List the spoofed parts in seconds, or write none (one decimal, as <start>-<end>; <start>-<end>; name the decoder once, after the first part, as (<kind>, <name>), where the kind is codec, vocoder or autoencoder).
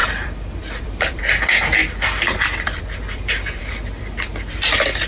0.0-1.2 (vocoder, BigVGAN v2); 1.8-5.1